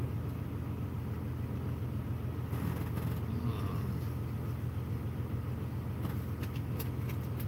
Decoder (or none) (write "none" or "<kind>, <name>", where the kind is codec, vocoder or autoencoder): none